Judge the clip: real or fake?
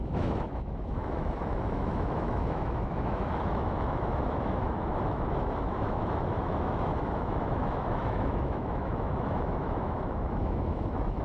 fake